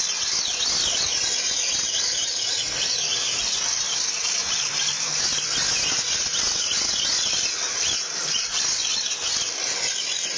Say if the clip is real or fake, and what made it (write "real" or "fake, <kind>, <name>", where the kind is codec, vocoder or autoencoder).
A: real